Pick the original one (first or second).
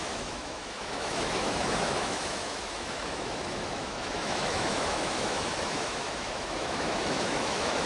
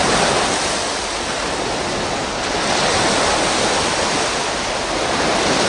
second